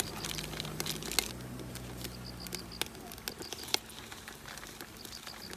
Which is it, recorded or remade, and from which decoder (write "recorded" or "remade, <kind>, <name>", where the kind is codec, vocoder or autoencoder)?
recorded